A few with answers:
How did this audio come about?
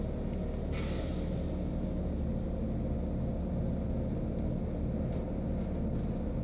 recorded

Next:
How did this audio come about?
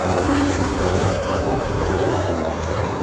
remade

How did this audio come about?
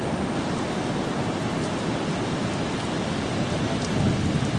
recorded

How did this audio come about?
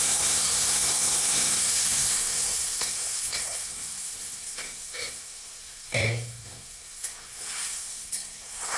remade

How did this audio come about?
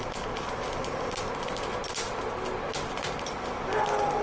recorded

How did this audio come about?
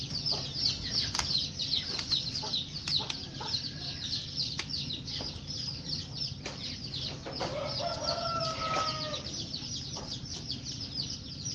recorded